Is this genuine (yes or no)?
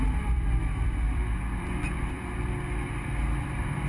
no